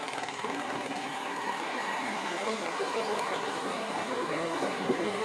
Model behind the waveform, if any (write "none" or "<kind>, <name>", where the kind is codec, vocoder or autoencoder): codec, SNAC